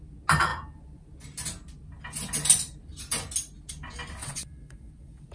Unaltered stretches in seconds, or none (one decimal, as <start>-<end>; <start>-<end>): 0.0-4.2